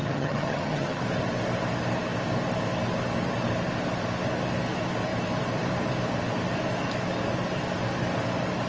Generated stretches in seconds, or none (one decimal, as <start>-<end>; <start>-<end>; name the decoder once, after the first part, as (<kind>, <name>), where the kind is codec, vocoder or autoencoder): 0.0-1.0 (vocoder, HiFi-GAN)